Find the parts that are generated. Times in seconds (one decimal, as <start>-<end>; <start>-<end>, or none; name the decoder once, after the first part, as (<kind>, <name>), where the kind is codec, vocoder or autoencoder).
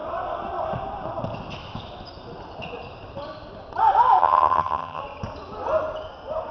4.2-5.0 (vocoder, HiFi-GAN)